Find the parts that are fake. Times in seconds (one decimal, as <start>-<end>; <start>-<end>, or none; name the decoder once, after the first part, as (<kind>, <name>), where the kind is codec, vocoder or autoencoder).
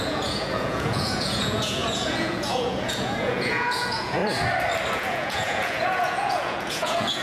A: 0.0-4.2 (vocoder, Vocos); 4.9-7.2